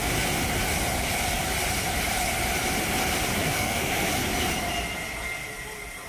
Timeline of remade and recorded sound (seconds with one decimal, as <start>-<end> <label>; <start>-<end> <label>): 0.0-3.4 recorded; 3.4-4.1 remade; 4.1-6.1 recorded